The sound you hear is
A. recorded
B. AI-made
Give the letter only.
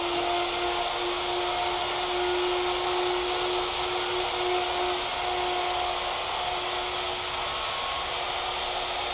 A